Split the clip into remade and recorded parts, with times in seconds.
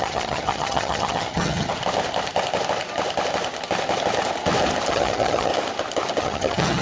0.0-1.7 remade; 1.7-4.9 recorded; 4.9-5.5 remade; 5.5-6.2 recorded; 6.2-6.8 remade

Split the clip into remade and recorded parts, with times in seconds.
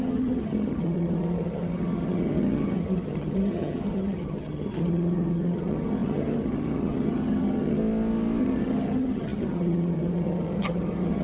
0.0-7.8 remade; 7.8-8.4 recorded; 8.4-11.2 remade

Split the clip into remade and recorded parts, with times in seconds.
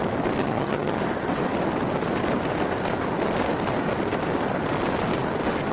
0.0-0.4 recorded; 0.4-1.0 remade; 1.0-5.7 recorded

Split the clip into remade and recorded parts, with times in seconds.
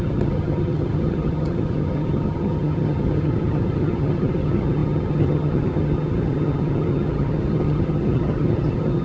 0.0-9.0 remade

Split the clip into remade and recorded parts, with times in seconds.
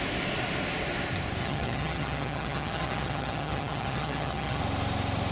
0.0-1.4 recorded; 1.4-4.6 remade; 4.6-5.3 recorded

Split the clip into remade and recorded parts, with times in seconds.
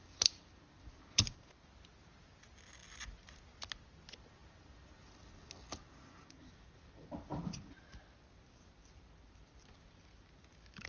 0.0-10.9 recorded